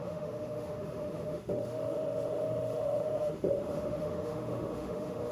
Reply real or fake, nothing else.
fake